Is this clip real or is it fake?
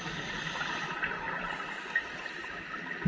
real